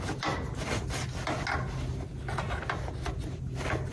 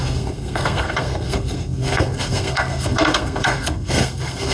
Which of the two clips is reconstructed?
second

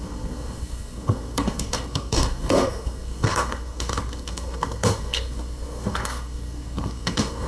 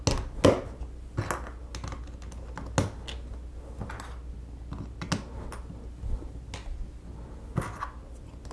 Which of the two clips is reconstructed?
first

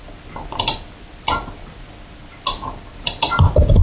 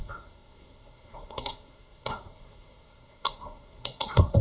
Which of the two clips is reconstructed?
second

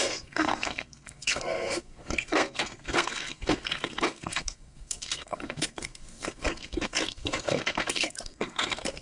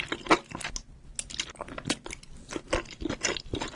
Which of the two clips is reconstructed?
first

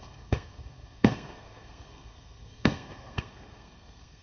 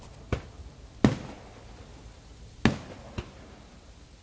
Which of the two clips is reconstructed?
first